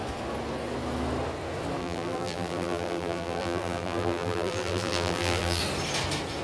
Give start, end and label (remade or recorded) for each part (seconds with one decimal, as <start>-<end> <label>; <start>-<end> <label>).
0.0-1.8 recorded; 1.8-5.6 remade; 5.6-6.4 recorded

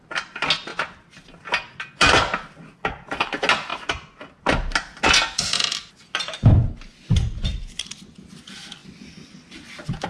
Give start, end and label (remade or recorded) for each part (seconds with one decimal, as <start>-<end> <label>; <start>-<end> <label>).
0.0-10.1 recorded

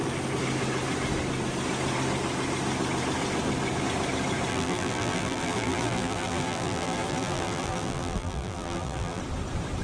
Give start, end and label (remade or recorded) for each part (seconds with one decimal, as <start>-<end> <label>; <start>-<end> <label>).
0.0-4.5 recorded; 4.5-9.2 remade; 9.2-9.8 recorded

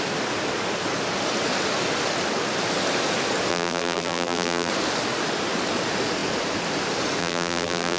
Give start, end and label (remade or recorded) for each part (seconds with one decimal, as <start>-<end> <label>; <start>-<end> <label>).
0.0-3.5 recorded; 3.5-4.7 remade; 4.7-7.2 recorded; 7.2-8.0 remade

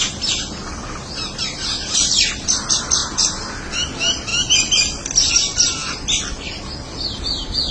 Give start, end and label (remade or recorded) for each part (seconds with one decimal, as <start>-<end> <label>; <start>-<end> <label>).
0.0-7.7 recorded